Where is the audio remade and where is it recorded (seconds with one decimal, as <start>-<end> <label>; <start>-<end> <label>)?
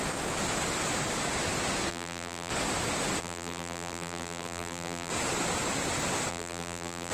0.0-1.9 recorded; 1.9-2.5 remade; 2.5-3.2 recorded; 3.2-5.1 remade; 5.1-6.3 recorded; 6.3-7.1 remade